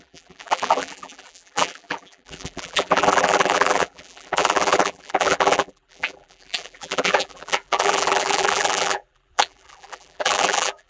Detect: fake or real fake